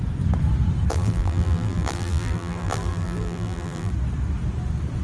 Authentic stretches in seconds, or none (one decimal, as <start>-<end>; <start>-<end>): 0.0-0.9; 3.9-5.0